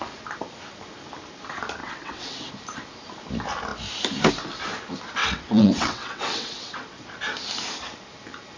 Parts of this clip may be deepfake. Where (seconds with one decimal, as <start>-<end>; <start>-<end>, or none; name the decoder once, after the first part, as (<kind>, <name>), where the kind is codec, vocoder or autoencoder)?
1.8-2.5 (vocoder, WaveNeXt); 5.2-7.0